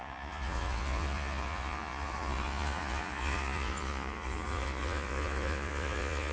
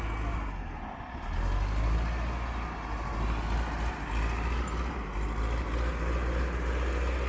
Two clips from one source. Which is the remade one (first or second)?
first